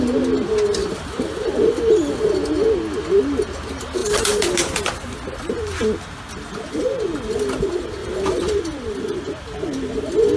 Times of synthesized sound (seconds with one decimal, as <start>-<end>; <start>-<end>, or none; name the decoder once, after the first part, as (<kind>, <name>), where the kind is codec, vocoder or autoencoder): 0.8-2.5 (vocoder, BigVGAN v2); 4.0-4.5; 8.0-8.5